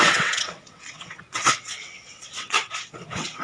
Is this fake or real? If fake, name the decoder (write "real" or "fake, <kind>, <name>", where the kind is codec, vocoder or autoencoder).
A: fake, vocoder, WaveNeXt